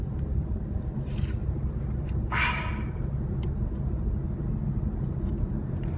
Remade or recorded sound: recorded